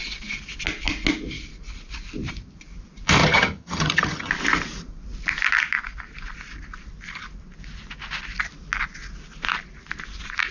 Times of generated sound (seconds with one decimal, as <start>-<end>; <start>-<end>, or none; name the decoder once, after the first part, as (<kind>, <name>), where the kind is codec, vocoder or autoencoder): 3.2-4.3 (vocoder, HiFi-GAN)